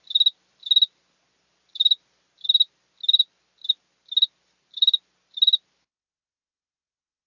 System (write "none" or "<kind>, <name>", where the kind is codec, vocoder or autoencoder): none